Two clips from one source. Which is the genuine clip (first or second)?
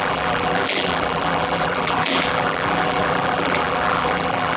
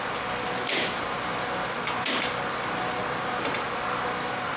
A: second